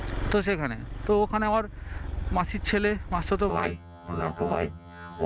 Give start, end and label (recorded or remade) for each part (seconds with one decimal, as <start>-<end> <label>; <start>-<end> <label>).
0.0-3.5 recorded; 3.5-5.3 remade